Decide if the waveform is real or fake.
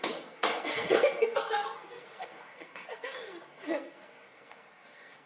fake